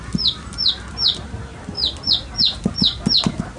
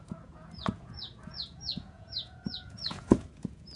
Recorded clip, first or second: first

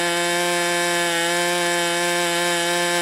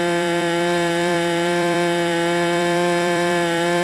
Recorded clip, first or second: first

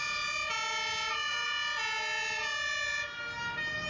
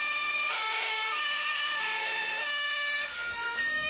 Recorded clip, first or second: first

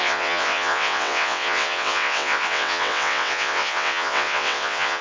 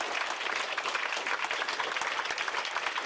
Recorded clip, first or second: second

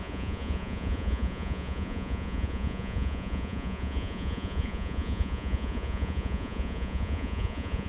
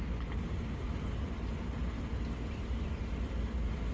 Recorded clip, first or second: second